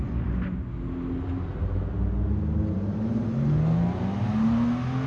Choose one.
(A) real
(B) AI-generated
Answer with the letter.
A